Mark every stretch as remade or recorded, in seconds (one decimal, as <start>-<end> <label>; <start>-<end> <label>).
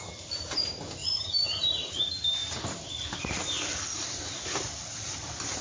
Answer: 0.0-1.0 recorded; 1.0-1.9 remade; 1.9-2.4 recorded; 2.4-5.6 remade